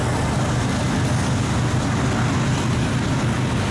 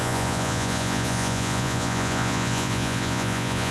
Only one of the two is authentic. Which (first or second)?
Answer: first